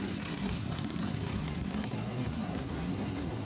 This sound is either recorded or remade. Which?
remade